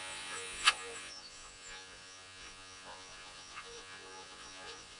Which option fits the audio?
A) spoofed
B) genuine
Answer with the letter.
A